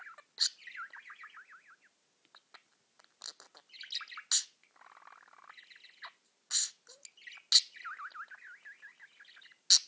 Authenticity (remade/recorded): recorded